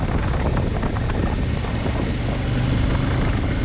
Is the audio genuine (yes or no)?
yes